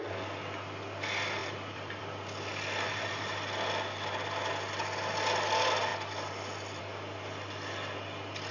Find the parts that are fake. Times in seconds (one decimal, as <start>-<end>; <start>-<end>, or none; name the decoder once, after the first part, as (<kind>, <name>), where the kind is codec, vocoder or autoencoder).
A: 1.4-2.0 (vocoder, BigVGAN v2)